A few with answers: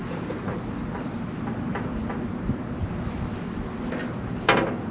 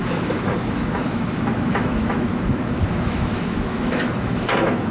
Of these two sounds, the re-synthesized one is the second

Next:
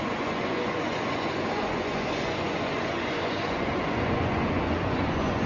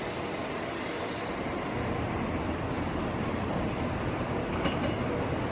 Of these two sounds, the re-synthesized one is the first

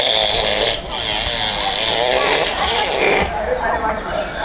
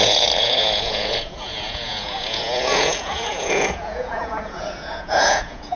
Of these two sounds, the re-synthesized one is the second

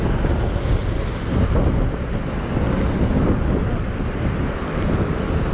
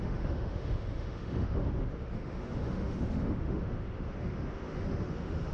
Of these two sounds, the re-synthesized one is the second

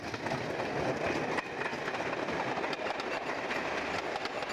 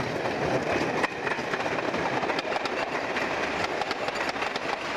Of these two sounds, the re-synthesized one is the second